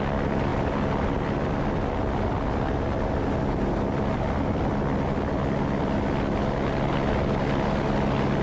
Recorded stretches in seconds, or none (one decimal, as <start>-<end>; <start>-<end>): 0.0-8.4